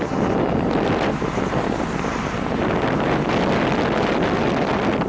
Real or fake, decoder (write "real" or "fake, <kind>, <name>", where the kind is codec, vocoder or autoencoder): real